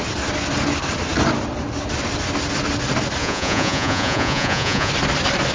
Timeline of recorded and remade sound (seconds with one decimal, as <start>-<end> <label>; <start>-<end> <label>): 0.0-3.2 recorded; 3.2-4.9 remade; 4.9-5.5 recorded